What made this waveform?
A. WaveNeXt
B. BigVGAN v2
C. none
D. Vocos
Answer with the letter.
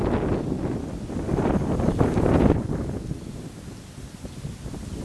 C